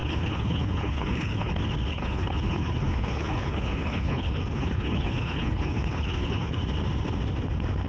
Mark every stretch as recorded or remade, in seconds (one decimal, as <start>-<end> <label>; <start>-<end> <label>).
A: 0.0-1.5 remade; 1.5-1.9 recorded; 1.9-6.6 remade; 6.6-7.9 recorded